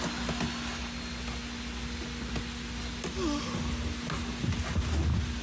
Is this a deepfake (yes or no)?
no